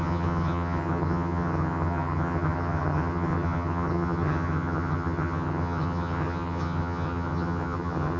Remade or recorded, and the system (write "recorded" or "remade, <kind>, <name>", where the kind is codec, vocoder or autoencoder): remade, vocoder, HiFi-GAN